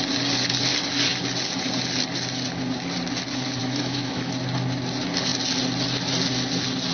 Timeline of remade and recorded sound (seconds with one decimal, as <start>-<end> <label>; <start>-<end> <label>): 0.0-3.6 recorded; 3.6-4.3 remade; 4.3-6.9 recorded